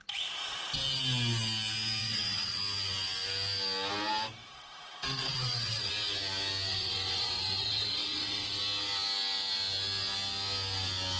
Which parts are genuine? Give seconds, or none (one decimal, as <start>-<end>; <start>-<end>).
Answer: 0.0-2.0; 2.6-4.4; 5.9-6.7; 8.6-11.2